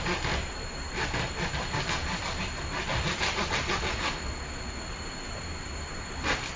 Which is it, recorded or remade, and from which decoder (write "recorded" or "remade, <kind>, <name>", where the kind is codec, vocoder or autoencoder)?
recorded